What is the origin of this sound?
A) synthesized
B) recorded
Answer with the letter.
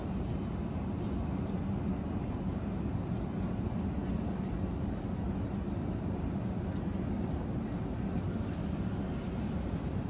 B